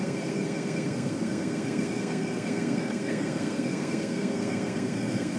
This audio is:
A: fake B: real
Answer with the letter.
A